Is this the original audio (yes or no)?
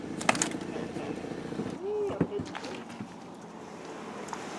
yes